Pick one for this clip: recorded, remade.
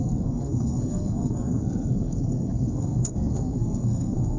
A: remade